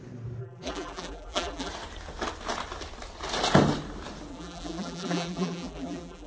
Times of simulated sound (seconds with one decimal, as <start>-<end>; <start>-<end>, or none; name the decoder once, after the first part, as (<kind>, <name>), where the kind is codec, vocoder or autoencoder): 0.4-1.7 (vocoder, BigVGAN v2); 4.3-6.3